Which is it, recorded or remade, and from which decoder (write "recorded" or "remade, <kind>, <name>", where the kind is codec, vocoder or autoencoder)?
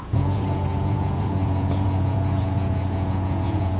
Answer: remade, vocoder, Vocos